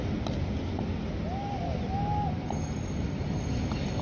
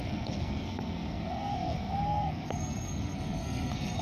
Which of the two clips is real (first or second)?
first